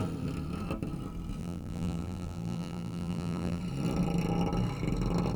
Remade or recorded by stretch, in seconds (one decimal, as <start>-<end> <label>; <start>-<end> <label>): 0.0-1.4 recorded; 1.4-3.6 remade; 3.6-5.4 recorded